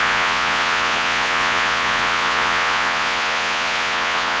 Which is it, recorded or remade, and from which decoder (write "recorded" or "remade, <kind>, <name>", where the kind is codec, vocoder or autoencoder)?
remade, vocoder, Vocos